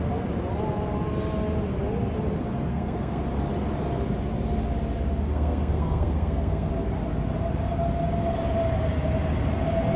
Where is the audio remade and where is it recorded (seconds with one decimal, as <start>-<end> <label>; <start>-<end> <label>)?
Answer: 0.0-2.7 recorded; 2.7-3.2 remade; 3.2-5.3 recorded; 5.3-6.7 remade; 6.7-10.0 recorded